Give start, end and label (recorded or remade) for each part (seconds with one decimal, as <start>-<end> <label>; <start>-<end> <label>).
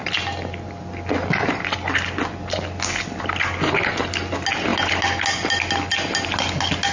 0.0-6.9 recorded